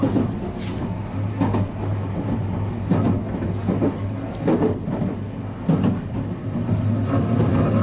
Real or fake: real